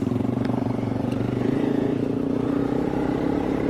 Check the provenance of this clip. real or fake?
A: fake